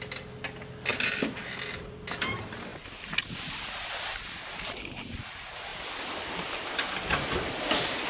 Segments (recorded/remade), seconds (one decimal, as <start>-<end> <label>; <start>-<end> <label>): 0.0-8.1 recorded